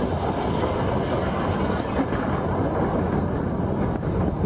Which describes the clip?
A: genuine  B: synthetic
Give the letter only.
A